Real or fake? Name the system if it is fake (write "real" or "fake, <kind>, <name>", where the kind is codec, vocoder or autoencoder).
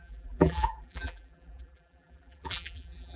fake, vocoder, BigVGAN v2